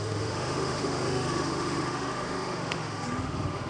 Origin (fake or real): fake